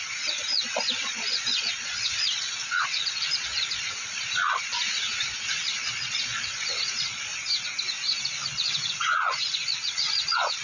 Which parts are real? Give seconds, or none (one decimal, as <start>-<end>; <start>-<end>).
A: 7.3-8.4